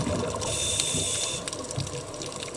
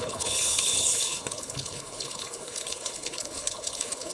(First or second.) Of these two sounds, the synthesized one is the second